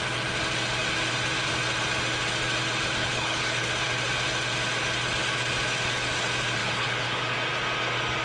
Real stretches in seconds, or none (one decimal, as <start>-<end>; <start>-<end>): 0.0-3.0; 3.7-6.6; 7.2-8.2